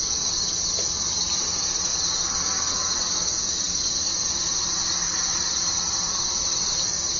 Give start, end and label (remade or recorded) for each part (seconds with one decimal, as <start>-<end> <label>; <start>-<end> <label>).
0.0-1.9 remade; 1.9-2.7 recorded; 2.7-7.2 remade